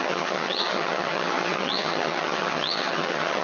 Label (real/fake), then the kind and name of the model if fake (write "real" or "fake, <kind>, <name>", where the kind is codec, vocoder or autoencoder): fake, vocoder, HiFi-GAN